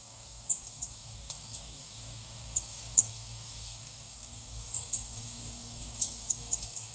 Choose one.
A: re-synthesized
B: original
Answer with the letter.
A